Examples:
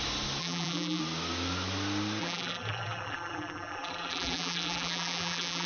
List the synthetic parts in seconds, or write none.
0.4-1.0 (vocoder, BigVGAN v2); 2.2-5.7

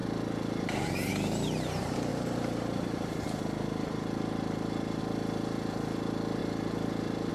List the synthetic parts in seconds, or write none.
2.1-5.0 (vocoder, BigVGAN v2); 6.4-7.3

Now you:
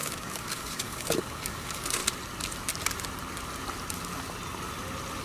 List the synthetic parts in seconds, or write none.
0.0-2.0 (codec, DAC)

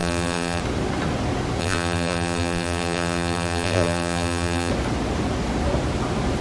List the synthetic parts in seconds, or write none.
0.0-0.6 (vocoder, BigVGAN v2); 1.6-4.7

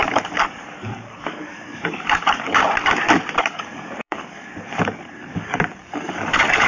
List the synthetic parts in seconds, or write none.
0.0-2.6 (codec, DAC); 3.4-6.7

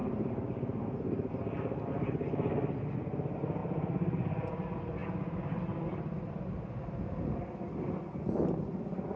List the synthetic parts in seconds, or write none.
none

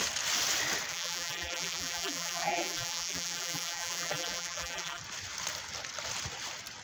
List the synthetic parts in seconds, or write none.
0.9-5.0 (vocoder, BigVGAN v2)